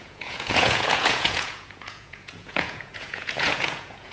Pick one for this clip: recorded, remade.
remade